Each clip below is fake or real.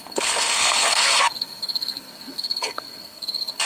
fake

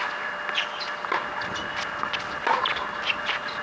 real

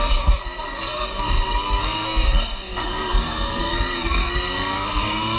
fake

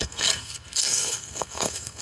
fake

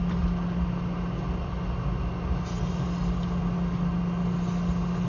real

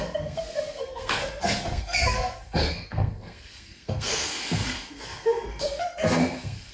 fake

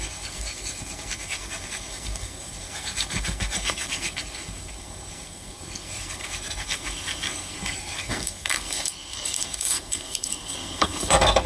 fake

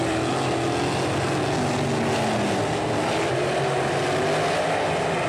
real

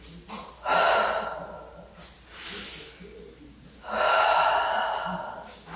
real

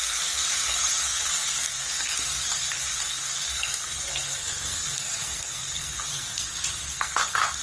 fake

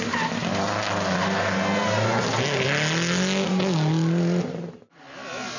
real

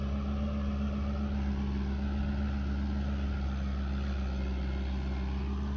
real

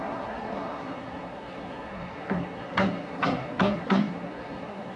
fake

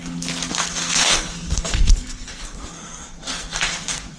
fake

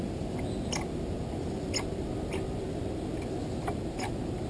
real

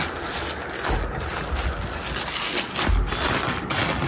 real